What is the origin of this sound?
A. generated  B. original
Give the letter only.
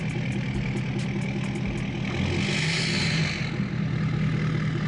B